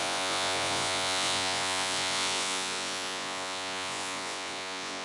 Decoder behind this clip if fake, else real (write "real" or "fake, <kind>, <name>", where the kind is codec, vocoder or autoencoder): fake, vocoder, Vocos